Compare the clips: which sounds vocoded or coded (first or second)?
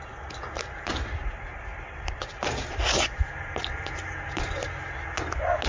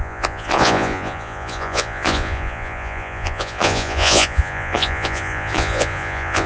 second